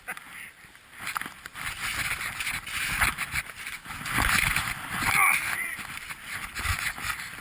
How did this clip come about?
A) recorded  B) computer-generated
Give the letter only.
A